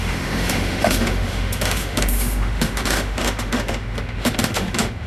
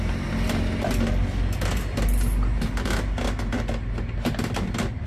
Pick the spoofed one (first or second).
first